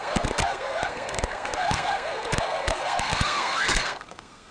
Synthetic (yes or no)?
yes